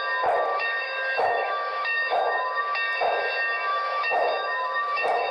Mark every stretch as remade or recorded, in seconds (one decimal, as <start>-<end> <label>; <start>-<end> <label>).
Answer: 0.0-0.5 recorded; 0.5-2.6 remade; 2.6-3.7 recorded; 3.7-5.3 remade